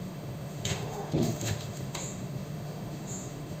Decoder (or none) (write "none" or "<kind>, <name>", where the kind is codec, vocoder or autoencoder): autoencoder, DAC-VAE